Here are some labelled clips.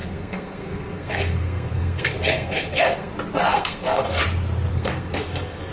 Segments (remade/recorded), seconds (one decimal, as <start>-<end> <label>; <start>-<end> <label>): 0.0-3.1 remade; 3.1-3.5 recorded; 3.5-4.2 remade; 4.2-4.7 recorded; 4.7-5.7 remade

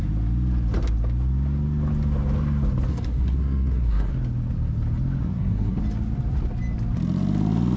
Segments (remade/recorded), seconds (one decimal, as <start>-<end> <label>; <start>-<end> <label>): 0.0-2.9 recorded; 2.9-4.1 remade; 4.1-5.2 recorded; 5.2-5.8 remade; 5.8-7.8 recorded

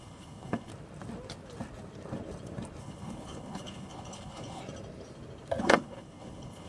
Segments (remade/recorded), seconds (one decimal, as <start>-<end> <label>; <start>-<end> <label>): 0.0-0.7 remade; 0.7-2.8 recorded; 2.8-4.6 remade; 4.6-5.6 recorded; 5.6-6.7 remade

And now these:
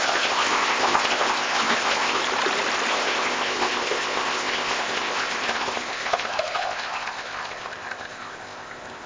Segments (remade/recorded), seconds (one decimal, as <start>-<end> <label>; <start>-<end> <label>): 0.0-2.2 remade; 2.2-2.9 recorded; 2.9-9.1 remade

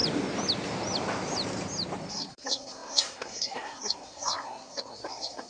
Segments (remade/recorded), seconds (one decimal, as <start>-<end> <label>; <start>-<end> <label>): 0.0-2.1 recorded; 2.1-5.5 remade

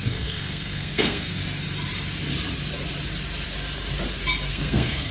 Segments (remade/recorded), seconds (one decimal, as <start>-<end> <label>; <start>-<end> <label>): 0.0-1.4 remade; 1.4-4.5 recorded; 4.5-5.1 remade

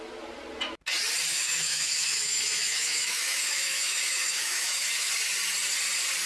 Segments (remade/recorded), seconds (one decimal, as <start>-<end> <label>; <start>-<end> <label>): 0.0-1.3 recorded; 1.3-5.1 remade; 5.1-6.3 recorded

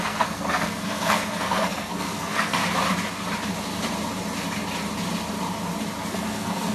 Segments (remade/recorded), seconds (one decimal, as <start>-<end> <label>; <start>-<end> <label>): 0.0-2.6 remade; 2.6-6.1 recorded; 6.1-6.7 remade